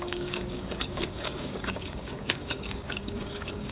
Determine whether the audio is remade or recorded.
remade